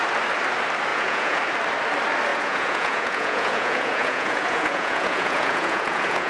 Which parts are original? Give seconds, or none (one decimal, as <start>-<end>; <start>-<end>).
0.0-0.9; 1.4-2.3